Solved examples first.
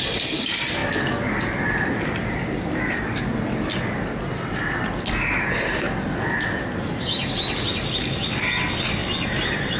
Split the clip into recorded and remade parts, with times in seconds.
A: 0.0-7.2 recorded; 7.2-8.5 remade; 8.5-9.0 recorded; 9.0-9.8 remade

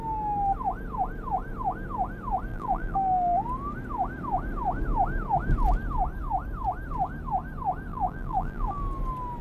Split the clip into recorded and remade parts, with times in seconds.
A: 0.0-2.5 recorded; 2.5-3.4 remade; 3.4-7.9 recorded; 7.9-8.8 remade; 8.8-9.4 recorded

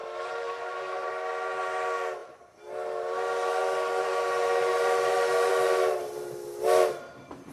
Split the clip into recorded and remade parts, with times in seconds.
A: 0.0-1.1 remade; 1.1-7.5 recorded

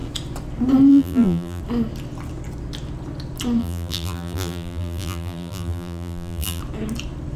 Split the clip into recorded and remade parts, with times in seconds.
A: 0.0-0.9 recorded; 0.9-1.6 remade; 1.6-3.6 recorded; 3.6-6.6 remade; 6.6-7.4 recorded

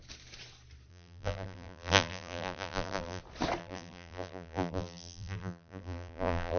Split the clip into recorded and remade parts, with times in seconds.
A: 0.0-0.9 recorded; 0.9-3.2 remade; 3.2-3.6 recorded; 3.6-6.6 remade